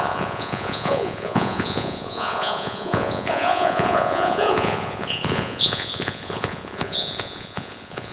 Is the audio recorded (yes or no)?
no